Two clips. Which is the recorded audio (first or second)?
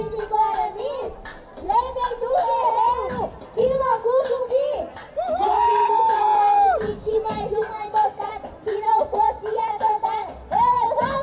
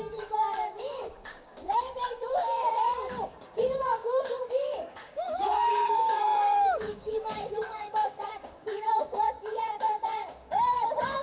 first